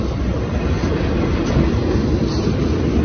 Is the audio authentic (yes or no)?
yes